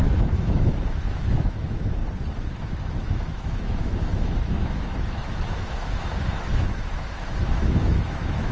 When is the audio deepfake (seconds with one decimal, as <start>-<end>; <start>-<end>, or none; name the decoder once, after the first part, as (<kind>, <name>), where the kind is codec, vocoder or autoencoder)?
0.0-2.0 (autoencoder, DAC-VAE); 2.6-8.5